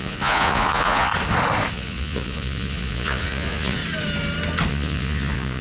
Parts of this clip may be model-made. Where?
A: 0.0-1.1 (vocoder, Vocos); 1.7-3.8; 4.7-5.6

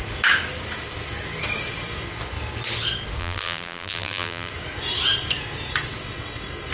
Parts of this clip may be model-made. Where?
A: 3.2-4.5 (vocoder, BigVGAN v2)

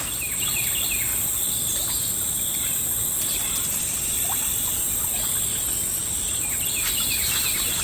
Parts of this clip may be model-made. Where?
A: none